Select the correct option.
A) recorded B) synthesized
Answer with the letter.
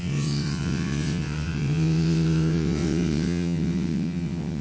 B